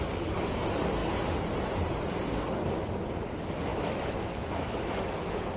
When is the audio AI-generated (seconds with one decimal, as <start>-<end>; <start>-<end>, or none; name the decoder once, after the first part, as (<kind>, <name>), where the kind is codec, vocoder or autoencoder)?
3.7-5.6 (autoencoder, DAC-VAE)